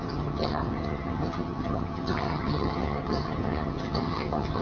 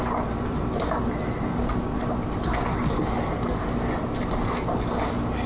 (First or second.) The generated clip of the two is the first